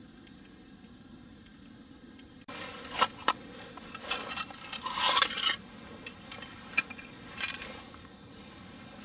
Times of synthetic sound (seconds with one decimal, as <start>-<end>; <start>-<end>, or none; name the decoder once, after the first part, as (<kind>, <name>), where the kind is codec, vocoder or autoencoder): none